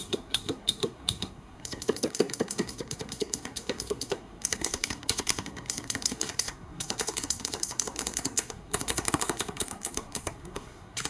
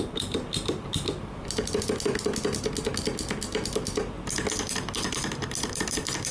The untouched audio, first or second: second